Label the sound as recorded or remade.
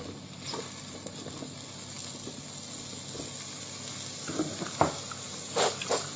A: recorded